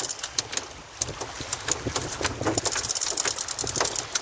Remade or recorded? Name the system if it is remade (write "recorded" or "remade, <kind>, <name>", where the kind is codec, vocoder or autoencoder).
recorded